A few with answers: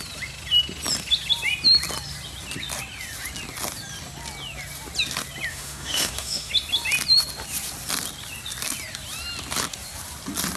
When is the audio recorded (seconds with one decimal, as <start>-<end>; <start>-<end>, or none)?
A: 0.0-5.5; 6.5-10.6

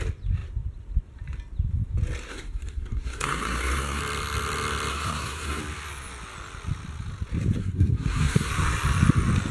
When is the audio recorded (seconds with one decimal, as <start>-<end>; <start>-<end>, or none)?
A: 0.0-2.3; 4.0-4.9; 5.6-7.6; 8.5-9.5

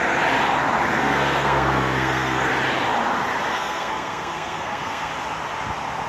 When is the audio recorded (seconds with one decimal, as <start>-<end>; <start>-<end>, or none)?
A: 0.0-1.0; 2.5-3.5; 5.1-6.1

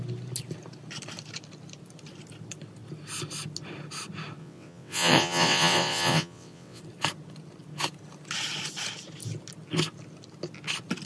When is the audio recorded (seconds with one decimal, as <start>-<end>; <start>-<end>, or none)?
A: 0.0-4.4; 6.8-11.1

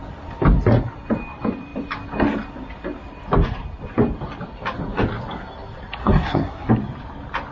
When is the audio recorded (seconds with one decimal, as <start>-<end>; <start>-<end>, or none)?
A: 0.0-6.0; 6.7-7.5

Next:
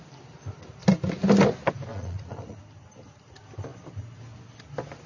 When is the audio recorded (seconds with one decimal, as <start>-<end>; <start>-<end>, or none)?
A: 0.0-1.9; 2.6-5.1